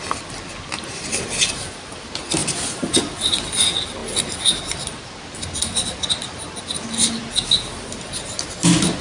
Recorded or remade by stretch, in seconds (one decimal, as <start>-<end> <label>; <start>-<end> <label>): 0.0-9.0 recorded